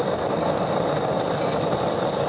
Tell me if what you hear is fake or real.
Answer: real